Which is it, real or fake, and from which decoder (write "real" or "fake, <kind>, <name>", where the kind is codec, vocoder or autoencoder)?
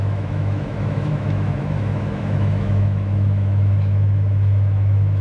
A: fake, autoencoder, DAC-VAE